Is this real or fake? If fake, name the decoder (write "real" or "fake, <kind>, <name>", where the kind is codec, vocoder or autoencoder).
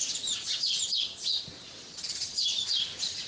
real